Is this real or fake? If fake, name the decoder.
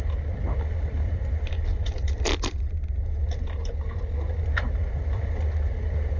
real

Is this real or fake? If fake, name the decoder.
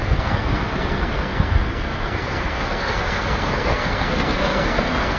fake, codec, SNAC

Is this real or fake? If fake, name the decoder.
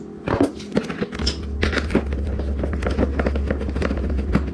real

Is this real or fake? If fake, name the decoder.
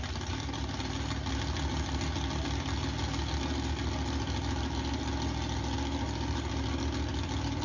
real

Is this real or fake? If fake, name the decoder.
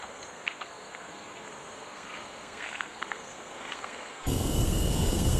fake, codec, SNAC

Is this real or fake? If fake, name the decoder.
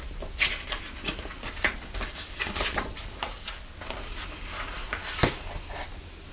real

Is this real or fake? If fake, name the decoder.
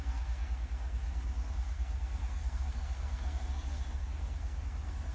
fake, codec, SNAC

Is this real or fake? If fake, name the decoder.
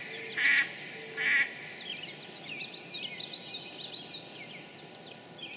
real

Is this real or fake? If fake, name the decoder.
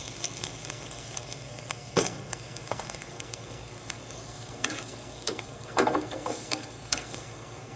fake, codec, SNAC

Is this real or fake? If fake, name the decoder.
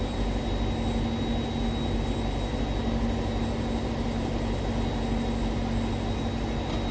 real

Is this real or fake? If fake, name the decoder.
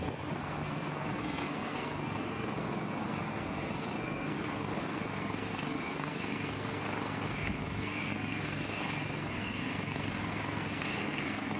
fake, codec, SNAC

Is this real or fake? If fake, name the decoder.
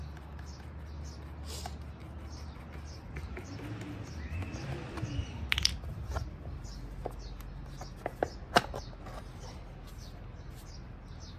real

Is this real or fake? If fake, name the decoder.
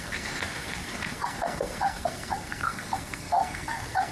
fake, codec, SNAC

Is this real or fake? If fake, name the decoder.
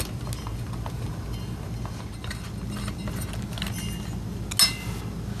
real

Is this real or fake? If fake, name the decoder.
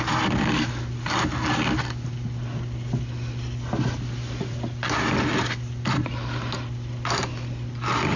real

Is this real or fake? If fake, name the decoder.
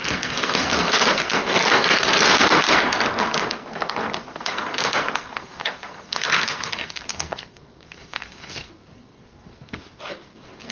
fake, codec, SNAC